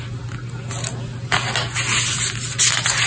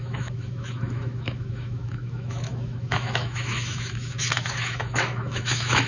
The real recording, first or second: first